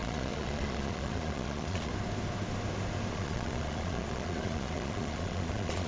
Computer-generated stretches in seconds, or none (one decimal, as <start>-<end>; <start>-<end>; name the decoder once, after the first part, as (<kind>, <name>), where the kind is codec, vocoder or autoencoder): 0.0-1.9 (vocoder, Vocos); 3.1-5.9